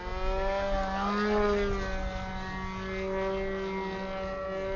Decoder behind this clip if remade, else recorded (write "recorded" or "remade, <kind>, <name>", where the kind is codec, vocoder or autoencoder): recorded